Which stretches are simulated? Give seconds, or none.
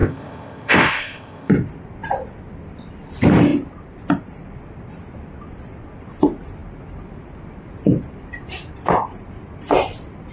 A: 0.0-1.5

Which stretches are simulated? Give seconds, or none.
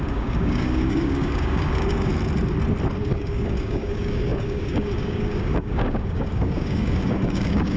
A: 0.0-2.1; 3.0-7.8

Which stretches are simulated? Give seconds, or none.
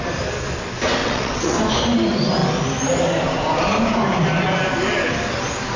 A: 1.0-1.6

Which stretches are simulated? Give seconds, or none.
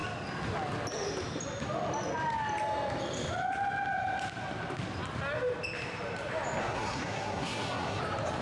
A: 6.6-8.0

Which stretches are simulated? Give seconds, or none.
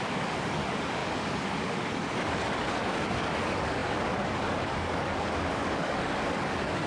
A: 0.0-6.9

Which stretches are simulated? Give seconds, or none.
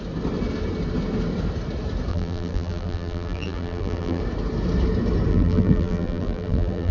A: 2.1-4.2; 5.3-6.9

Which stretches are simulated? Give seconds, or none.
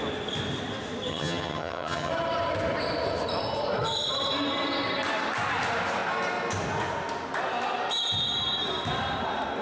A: 1.1-2.1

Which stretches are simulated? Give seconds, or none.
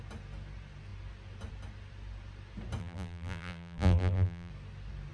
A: 2.8-4.5